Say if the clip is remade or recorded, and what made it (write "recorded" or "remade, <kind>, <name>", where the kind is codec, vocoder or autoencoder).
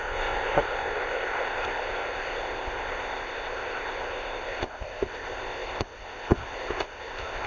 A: remade, codec, ZipCodec